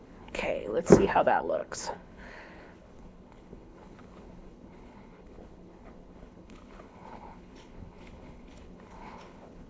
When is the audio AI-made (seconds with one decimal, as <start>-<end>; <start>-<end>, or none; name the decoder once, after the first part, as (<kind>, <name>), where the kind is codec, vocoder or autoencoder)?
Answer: 0.0-9.7 (codec, HILCodec)